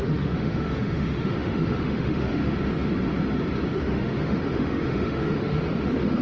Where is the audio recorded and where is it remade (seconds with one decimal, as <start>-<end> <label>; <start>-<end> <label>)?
0.0-2.4 remade; 2.4-3.7 recorded; 3.7-6.2 remade

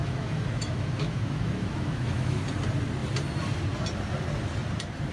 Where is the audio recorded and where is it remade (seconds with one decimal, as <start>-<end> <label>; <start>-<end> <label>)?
0.0-2.4 remade; 2.4-5.1 recorded